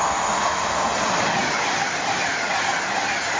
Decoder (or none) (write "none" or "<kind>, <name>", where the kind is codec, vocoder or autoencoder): none